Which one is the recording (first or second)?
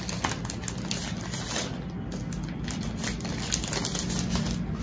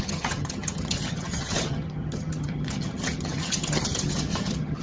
first